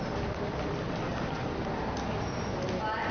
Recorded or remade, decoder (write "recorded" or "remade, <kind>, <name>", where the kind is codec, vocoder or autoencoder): recorded